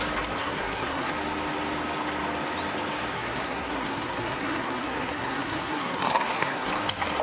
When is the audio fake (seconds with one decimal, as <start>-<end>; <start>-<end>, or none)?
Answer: 0.4-1.1; 3.1-6.7